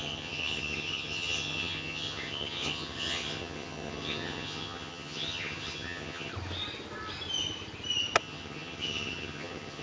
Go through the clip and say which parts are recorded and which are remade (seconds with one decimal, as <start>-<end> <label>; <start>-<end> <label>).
0.0-6.3 remade; 6.3-8.2 recorded; 8.2-9.8 remade